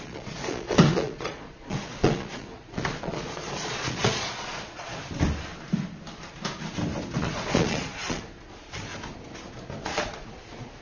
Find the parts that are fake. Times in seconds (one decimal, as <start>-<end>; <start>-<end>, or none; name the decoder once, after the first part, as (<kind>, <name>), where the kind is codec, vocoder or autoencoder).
0.0-5.0 (vocoder, Vocos); 7.2-8.9; 9.8-10.8